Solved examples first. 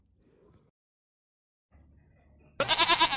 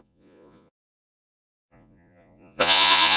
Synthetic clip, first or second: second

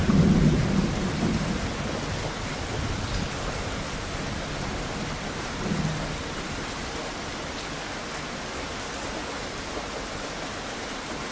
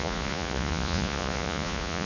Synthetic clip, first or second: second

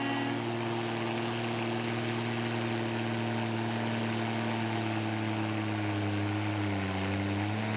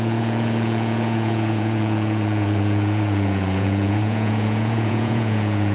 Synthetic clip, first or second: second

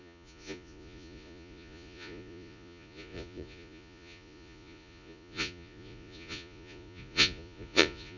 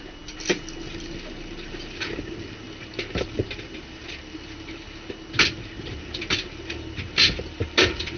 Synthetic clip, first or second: first